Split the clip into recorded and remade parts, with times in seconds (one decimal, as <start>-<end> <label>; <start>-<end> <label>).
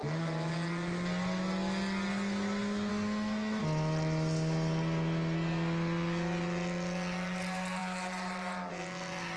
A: 0.0-2.9 recorded; 2.9-3.6 remade; 3.6-9.4 recorded